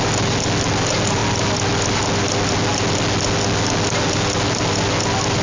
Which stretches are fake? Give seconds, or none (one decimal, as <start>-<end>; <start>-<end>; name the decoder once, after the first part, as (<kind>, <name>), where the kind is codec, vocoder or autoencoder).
none